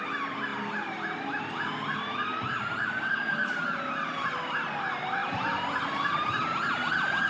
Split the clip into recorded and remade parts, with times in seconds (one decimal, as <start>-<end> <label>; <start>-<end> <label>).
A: 0.0-2.3 recorded; 2.3-3.5 remade; 3.5-5.2 recorded; 5.2-7.3 remade